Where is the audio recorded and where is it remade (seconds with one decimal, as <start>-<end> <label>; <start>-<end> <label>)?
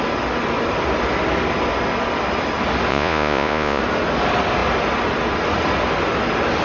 0.0-2.9 recorded; 2.9-3.8 remade; 3.8-6.6 recorded